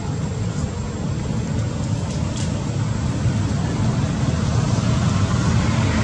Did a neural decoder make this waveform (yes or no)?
no